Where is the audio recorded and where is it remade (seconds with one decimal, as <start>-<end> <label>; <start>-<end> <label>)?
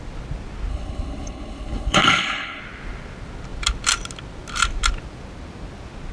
0.0-0.7 recorded; 0.7-2.6 remade; 2.6-6.1 recorded